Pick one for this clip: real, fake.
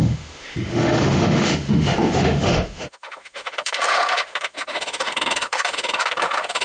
fake